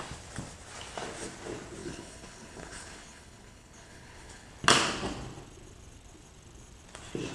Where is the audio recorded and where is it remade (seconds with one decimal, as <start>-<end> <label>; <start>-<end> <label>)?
0.0-1.8 recorded; 1.8-4.5 remade; 4.5-7.3 recorded